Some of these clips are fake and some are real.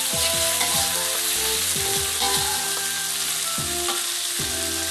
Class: real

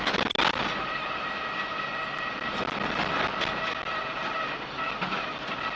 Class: real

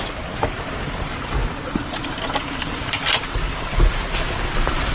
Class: real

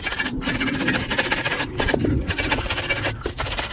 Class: real